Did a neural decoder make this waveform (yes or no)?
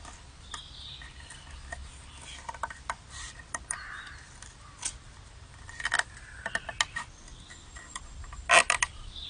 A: no